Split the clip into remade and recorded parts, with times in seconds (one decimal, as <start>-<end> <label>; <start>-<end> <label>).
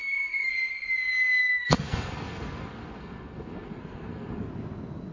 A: 0.0-0.5 remade; 0.5-1.4 recorded; 1.4-4.5 remade; 4.5-5.1 recorded